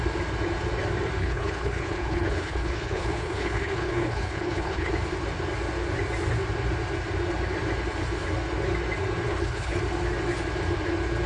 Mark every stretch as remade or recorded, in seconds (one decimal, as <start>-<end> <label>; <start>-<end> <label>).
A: 0.0-1.2 recorded; 1.2-4.9 remade; 4.9-9.3 recorded; 9.3-9.8 remade; 9.8-11.3 recorded